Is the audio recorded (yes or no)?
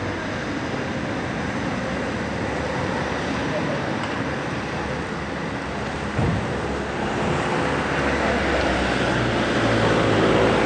yes